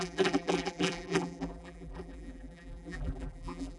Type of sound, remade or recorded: remade